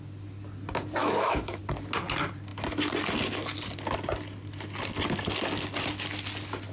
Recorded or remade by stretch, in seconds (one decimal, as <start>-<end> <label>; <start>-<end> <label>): 0.0-1.0 recorded; 1.0-1.6 remade; 1.6-6.7 recorded